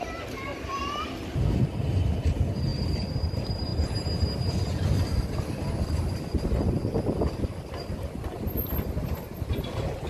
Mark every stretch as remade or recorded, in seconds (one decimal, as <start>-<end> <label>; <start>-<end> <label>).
0.0-10.1 recorded